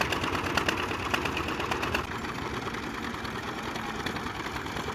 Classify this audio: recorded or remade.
recorded